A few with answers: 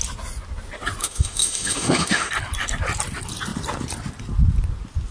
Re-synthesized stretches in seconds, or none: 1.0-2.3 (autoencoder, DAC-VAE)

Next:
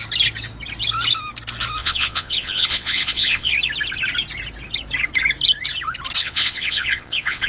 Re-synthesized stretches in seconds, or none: 1.8-3.5 (vocoder, Vocos); 6.2-7.5

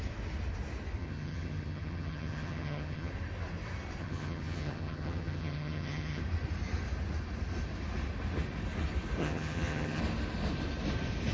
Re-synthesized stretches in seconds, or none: 1.0-3.1 (vocoder, HiFi-GAN); 4.0-6.2; 9.2-10.0

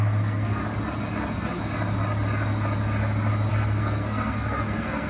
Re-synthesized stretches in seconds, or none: 0.0-0.6 (codec, SNAC); 3.5-5.1